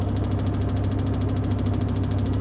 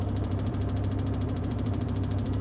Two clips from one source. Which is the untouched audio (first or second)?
first